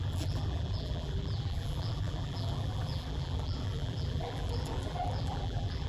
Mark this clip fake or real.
fake